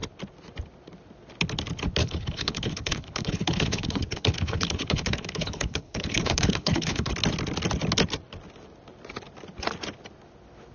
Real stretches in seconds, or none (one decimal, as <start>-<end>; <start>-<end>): 0.0-2.0; 7.1-10.7